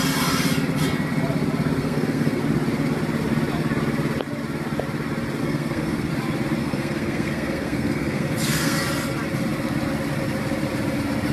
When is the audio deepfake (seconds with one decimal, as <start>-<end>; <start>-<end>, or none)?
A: 1.8-2.4; 5.4-6.1; 6.6-8.8